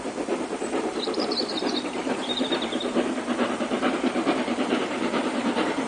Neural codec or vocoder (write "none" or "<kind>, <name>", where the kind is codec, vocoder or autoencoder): vocoder, BigVGAN v2